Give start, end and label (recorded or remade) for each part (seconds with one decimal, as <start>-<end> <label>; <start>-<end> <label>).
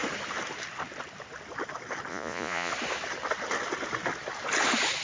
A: 0.0-2.1 recorded; 2.1-2.7 remade; 2.7-5.0 recorded